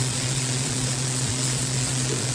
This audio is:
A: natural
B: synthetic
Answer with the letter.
B